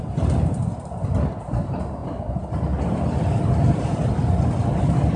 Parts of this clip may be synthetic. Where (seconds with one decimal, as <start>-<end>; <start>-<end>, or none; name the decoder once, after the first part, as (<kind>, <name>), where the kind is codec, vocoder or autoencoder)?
none